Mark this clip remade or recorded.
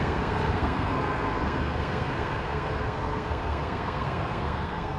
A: remade